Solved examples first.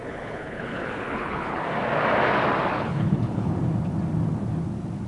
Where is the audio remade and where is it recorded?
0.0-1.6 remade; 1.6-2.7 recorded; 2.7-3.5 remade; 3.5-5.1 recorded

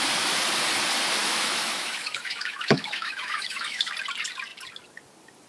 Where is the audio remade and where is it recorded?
0.0-1.2 recorded; 1.2-3.9 remade; 3.9-5.5 recorded

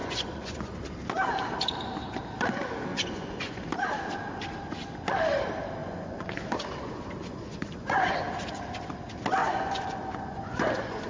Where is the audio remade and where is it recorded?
0.0-0.7 remade; 0.7-2.9 recorded; 2.9-3.6 remade; 3.6-5.8 recorded; 5.8-8.2 remade; 8.2-9.4 recorded; 9.4-11.1 remade

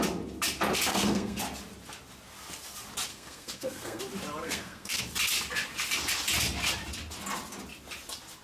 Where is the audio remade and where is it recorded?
0.0-0.9 recorded; 0.9-1.4 remade; 1.4-3.1 recorded; 3.1-4.0 remade; 4.0-4.4 recorded; 4.4-5.0 remade; 5.0-8.4 recorded

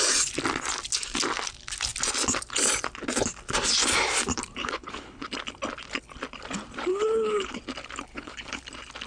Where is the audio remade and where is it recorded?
0.0-4.6 recorded; 4.6-5.3 remade; 5.3-6.9 recorded; 6.9-7.6 remade; 7.6-8.1 recorded; 8.1-8.6 remade; 8.6-9.1 recorded

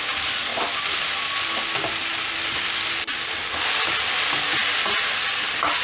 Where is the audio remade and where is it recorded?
0.0-5.8 recorded

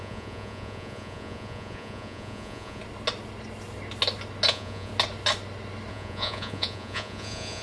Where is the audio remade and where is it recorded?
0.0-2.8 remade; 2.8-4.5 recorded; 4.5-4.9 remade; 4.9-5.9 recorded; 5.9-7.6 remade